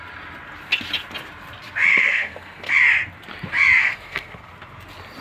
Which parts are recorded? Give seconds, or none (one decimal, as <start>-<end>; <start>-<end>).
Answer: 0.0-1.9; 2.7-3.8; 4.5-5.2